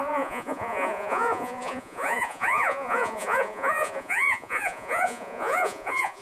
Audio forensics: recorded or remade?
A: remade